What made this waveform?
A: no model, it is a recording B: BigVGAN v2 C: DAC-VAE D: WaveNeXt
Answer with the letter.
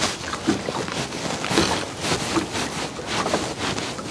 A